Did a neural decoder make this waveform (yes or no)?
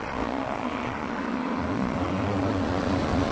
yes